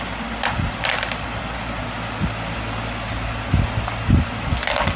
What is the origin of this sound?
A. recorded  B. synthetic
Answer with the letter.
A